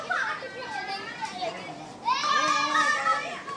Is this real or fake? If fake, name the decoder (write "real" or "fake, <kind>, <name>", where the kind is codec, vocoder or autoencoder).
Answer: real